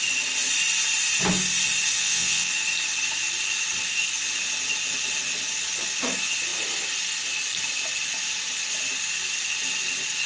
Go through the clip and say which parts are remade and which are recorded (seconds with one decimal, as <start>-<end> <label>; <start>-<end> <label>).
0.0-2.0 recorded; 2.0-2.5 remade; 2.5-10.3 recorded